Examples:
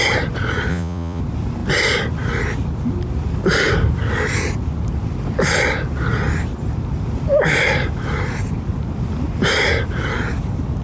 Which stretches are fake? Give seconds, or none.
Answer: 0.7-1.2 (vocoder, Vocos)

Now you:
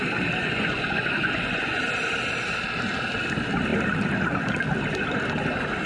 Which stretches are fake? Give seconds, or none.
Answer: 0.4-1.8 (vocoder, Vocos)

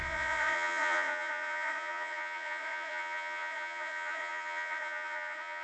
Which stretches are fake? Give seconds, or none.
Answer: 0.0-5.6 (vocoder, Vocos)

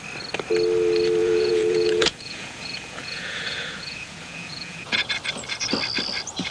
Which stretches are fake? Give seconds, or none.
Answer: 1.2-5.1 (vocoder, Vocos)